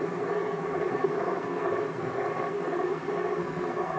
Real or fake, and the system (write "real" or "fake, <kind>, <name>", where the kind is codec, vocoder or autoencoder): fake, codec, SNAC